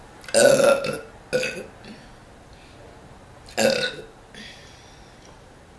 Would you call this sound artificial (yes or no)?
no